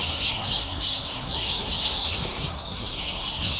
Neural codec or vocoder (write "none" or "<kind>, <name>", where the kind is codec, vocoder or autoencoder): codec, SNAC